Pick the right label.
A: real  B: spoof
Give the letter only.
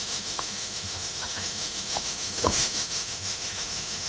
B